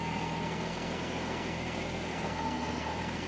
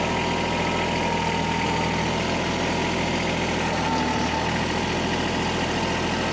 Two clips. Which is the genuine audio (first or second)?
second